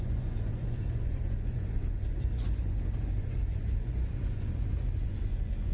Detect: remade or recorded remade